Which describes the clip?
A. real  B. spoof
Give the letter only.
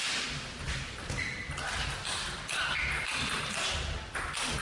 A